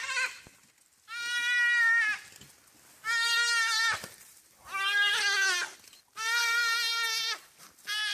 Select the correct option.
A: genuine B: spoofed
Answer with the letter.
A